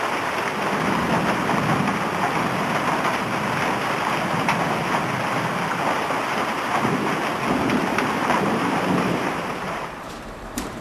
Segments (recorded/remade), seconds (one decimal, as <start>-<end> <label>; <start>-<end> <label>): 0.0-7.8 recorded; 7.8-10.8 remade